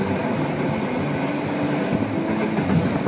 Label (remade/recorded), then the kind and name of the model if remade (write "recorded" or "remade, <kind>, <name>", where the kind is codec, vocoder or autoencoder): recorded